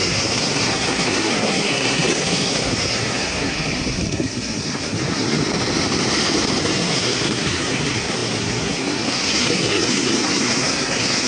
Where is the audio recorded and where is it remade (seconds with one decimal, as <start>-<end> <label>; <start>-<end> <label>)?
0.0-5.4 remade; 5.4-6.6 recorded; 6.6-11.3 remade